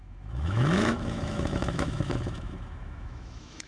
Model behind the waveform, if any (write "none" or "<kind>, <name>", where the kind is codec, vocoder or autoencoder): autoencoder, DAC-VAE